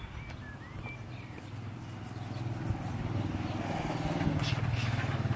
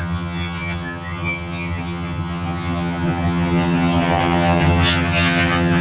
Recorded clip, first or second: first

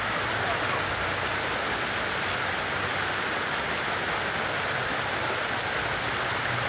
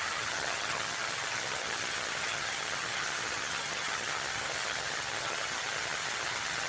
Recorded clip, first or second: first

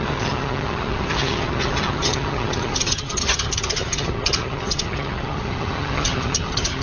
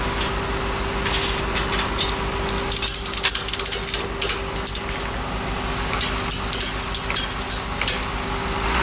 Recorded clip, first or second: second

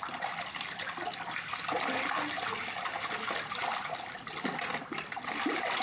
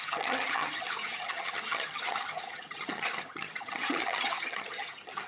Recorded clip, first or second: first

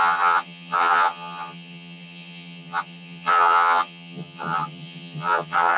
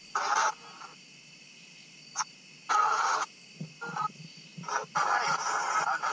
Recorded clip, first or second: second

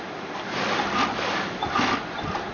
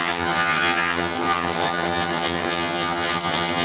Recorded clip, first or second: first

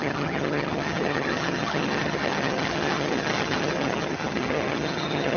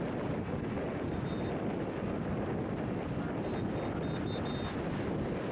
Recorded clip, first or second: second